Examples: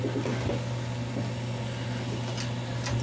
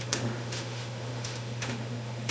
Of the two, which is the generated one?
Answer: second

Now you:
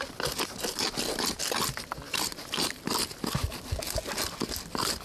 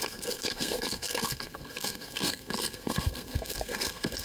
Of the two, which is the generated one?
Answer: second